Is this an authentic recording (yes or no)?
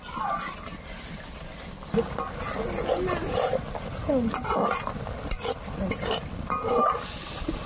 yes